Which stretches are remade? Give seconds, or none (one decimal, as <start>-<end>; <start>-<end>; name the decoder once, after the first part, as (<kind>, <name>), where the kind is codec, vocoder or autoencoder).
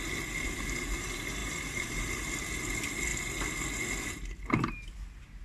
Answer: 1.4-2.1 (vocoder, BigVGAN v2)